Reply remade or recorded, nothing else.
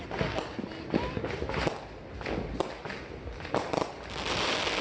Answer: recorded